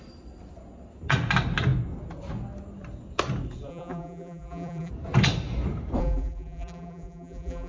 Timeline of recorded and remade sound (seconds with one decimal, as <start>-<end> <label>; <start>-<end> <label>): 0.0-3.7 recorded; 3.7-4.9 remade; 4.9-6.0 recorded; 6.0-7.7 remade